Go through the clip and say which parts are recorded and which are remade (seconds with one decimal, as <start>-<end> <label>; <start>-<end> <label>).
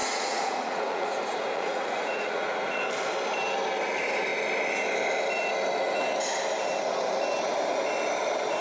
0.0-2.8 remade; 2.8-8.6 recorded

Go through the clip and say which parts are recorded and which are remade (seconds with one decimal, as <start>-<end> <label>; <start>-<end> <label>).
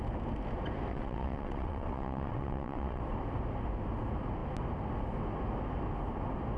0.0-0.9 recorded; 0.9-3.0 remade; 3.0-6.6 recorded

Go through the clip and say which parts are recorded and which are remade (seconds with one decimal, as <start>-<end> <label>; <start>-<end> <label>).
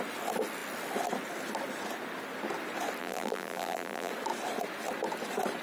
0.0-3.0 recorded; 3.0-4.1 remade; 4.1-5.6 recorded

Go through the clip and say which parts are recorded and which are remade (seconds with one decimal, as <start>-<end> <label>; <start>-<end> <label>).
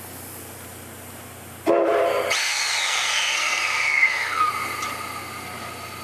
0.0-2.4 recorded; 2.4-4.5 remade; 4.5-6.0 recorded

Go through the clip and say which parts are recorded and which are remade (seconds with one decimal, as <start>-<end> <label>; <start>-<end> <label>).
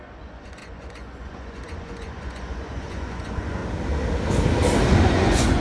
0.0-3.6 remade; 3.6-5.1 recorded; 5.1-5.6 remade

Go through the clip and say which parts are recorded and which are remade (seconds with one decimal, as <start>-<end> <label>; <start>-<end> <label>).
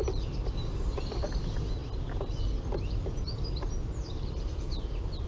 0.0-5.3 recorded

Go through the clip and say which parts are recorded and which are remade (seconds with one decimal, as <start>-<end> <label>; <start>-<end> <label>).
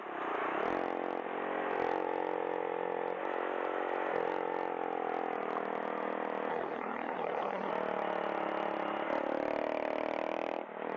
0.0-6.5 recorded; 6.5-7.7 remade; 7.7-11.0 recorded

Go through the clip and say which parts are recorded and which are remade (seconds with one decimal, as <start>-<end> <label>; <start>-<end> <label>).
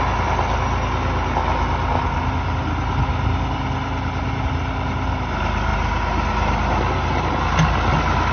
0.0-8.3 recorded